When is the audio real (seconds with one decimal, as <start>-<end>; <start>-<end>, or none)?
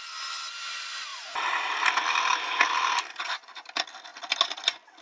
0.0-5.0